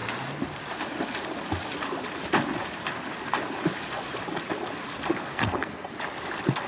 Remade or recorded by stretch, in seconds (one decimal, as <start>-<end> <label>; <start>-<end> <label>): 0.0-5.1 recorded; 5.1-5.9 remade; 5.9-6.7 recorded